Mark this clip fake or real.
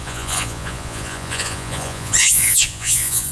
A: fake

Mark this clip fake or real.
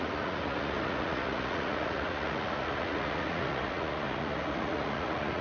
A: fake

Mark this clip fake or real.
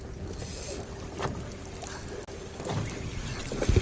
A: real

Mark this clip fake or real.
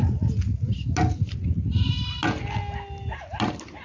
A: real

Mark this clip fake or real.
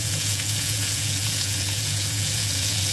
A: fake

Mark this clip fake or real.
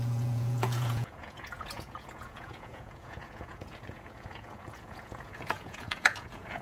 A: fake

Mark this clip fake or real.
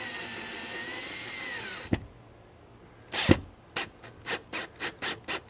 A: real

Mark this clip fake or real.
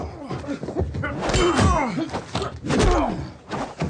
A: real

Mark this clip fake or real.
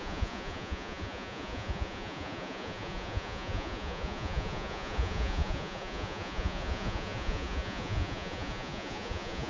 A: fake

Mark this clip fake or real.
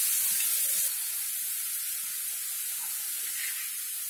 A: real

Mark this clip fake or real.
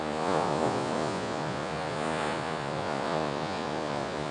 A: fake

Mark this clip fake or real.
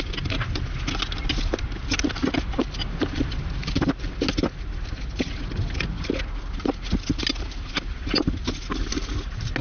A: real